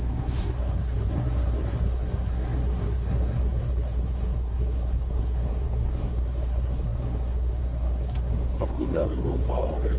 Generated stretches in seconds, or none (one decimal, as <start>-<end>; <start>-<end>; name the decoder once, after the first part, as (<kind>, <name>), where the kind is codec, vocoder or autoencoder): 0.0-10.0 (codec, SNAC)